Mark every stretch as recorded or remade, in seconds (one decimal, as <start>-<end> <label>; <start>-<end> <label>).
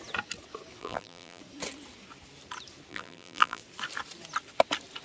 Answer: 0.0-0.8 recorded; 0.8-1.4 remade; 1.4-2.9 recorded; 2.9-3.6 remade; 3.6-5.0 recorded